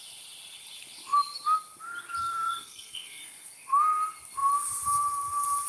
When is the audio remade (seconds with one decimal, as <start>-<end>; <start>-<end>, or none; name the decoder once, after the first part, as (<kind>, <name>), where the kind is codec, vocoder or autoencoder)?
2.2-3.2 (codec, SNAC)